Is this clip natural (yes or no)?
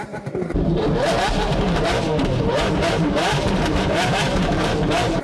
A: no